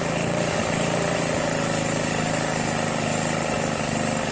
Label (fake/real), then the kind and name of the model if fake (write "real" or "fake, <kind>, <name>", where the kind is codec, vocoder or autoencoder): real